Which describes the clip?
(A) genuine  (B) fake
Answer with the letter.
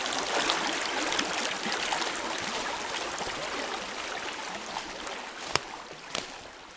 A